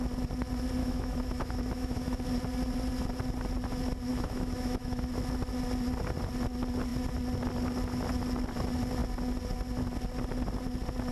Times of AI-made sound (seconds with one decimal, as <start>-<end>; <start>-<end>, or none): 0.8-2.2; 4.1-5.1